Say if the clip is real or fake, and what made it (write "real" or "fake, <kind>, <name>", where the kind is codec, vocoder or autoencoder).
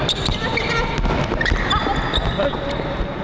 real